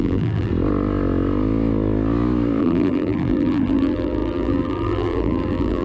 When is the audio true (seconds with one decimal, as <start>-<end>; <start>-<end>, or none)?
0.5-2.6